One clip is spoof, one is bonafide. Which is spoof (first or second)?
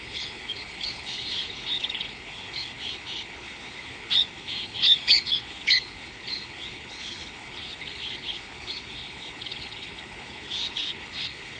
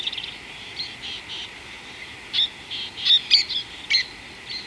first